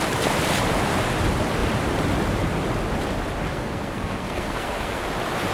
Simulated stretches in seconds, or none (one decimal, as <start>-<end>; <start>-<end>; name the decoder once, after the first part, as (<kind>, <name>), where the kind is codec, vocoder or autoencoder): 3.5-5.1 (codec, SNAC)